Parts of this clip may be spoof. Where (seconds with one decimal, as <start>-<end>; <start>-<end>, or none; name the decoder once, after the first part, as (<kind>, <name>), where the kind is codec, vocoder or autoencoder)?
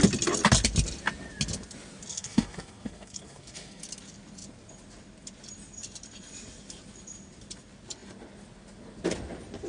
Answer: 2.1-3.8 (codec, SNAC)